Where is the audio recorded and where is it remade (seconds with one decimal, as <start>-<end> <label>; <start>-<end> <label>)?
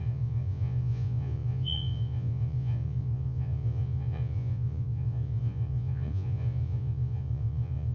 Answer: 0.0-7.9 remade